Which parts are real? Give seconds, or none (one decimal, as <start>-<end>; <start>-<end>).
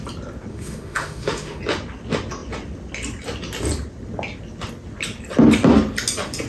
0.0-0.5; 1.6-6.5